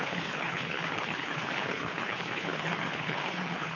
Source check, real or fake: fake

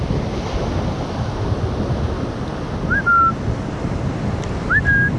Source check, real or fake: real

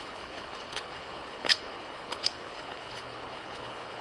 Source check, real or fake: fake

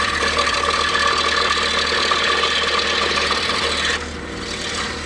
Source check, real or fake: real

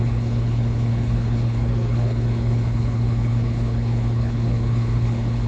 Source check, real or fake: fake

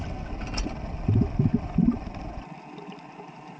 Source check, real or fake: real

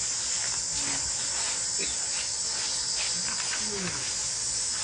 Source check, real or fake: real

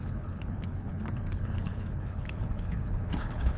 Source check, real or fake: fake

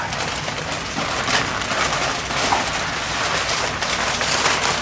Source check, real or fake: real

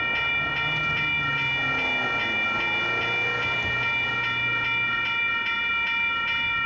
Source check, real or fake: real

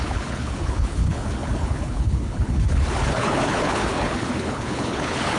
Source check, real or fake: fake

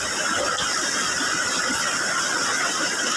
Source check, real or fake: real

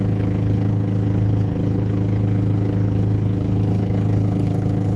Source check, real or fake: fake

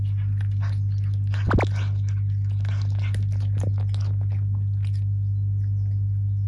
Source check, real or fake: real